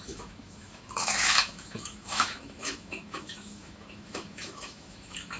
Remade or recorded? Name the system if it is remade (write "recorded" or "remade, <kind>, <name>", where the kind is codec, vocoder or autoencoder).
remade, autoencoder, DAC-VAE